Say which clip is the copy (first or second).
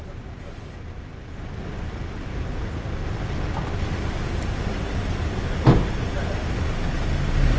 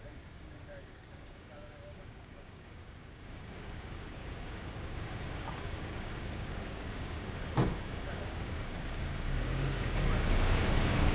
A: second